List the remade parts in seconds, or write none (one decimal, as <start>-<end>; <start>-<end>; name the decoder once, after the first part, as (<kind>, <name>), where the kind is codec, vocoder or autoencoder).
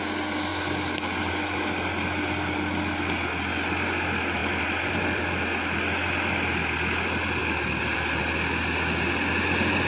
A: 4.4-5.2 (vocoder, BigVGAN v2); 7.4-8.2